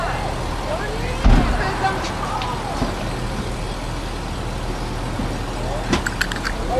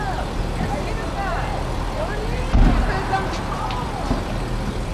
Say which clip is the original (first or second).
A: first